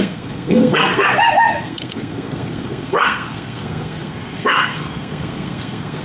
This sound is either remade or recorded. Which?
remade